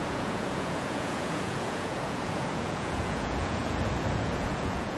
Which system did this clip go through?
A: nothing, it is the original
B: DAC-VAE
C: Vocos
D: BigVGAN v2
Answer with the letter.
C